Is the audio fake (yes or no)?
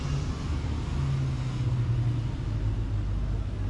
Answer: no